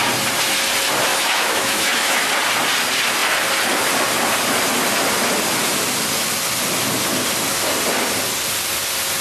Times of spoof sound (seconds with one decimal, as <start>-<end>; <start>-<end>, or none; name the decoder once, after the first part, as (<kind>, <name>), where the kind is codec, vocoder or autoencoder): 1.1-2.3 (autoencoder, DAC-VAE)